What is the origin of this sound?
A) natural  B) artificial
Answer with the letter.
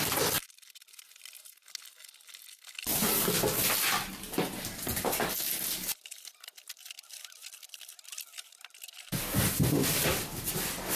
A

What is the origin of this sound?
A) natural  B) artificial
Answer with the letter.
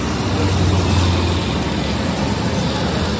A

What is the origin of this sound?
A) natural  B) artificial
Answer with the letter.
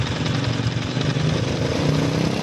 A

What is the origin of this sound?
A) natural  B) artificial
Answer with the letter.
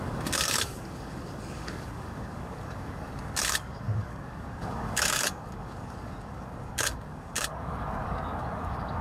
B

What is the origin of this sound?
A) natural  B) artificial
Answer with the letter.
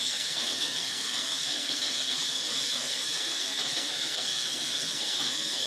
B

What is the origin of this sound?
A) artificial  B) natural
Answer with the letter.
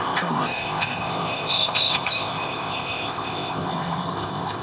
A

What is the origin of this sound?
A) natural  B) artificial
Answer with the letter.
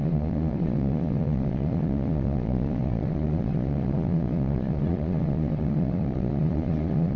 B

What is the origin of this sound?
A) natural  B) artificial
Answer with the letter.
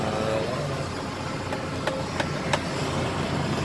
A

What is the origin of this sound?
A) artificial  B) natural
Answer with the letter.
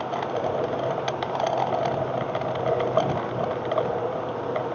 B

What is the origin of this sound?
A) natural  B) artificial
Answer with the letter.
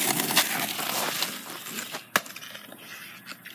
A